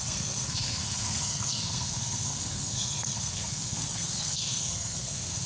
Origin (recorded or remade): remade